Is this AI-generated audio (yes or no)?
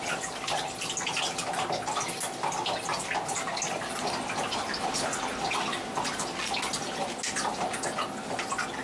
no